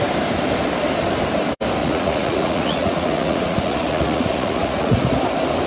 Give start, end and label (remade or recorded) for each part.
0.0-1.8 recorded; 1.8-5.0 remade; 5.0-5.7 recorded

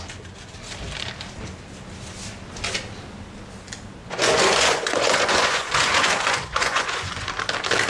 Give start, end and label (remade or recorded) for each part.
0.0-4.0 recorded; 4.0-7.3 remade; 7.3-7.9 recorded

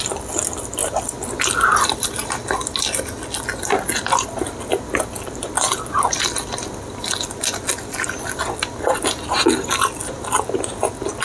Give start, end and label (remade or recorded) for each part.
0.0-11.2 recorded